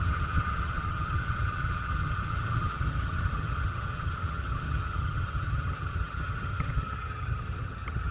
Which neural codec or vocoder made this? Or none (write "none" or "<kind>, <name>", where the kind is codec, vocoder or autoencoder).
vocoder, HiFi-GAN